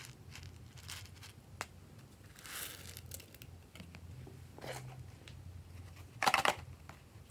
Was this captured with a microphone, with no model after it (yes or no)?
yes